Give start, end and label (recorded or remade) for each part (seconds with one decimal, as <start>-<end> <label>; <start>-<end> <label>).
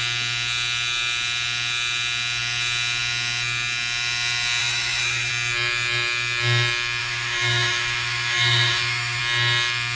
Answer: 0.0-4.6 recorded; 4.6-5.3 remade; 5.3-7.0 recorded; 7.0-9.2 remade; 9.2-9.9 recorded